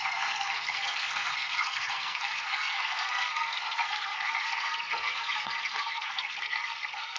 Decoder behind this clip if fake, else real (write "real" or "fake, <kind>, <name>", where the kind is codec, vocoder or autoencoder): fake, codec, SNAC